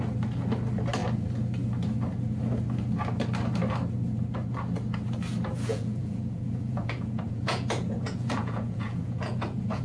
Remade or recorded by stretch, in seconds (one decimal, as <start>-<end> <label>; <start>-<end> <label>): 0.0-5.7 recorded; 5.7-9.8 remade